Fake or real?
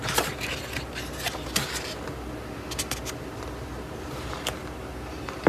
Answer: real